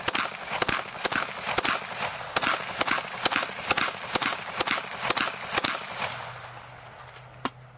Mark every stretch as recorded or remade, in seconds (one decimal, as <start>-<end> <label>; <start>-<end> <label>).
0.0-0.4 recorded; 0.4-1.3 remade; 1.3-2.3 recorded; 2.3-4.6 remade; 4.6-7.8 recorded